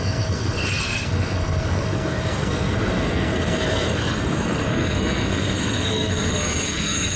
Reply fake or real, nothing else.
fake